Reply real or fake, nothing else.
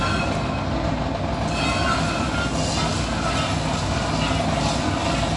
real